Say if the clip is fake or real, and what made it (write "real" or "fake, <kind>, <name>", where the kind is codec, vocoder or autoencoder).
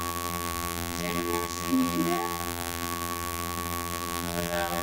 fake, vocoder, BigVGAN v2